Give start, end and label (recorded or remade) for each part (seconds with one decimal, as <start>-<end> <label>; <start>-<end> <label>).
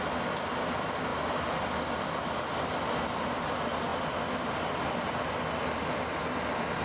0.0-6.8 recorded